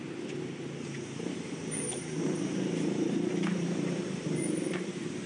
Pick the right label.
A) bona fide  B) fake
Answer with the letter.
B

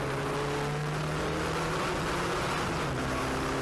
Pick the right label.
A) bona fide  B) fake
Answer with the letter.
A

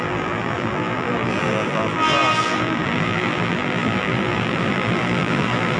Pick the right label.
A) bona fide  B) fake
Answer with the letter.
B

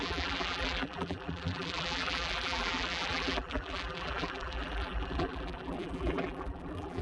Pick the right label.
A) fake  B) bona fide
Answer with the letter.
A